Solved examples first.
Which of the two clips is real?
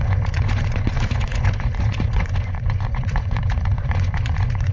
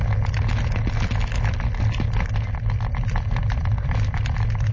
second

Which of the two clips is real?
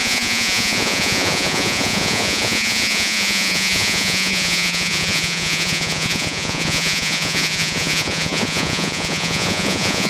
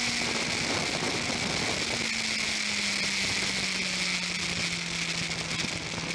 second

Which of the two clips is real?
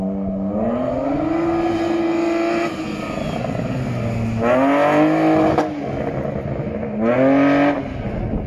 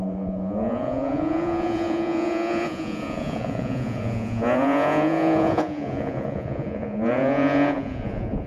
first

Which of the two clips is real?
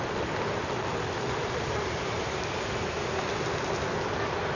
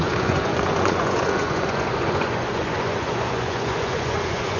first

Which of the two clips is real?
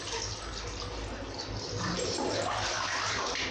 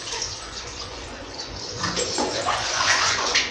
first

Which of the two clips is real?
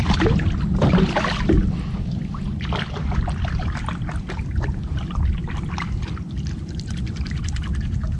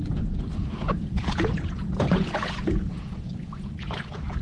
first